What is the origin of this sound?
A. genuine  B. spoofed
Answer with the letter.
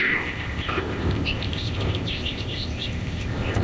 B